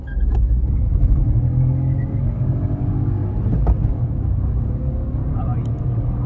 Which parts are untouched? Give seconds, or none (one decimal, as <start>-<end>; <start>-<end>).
3.2-3.9; 5.2-5.8